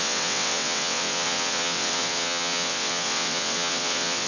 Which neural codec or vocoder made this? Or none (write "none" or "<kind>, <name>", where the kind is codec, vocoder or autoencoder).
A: vocoder, WaveNeXt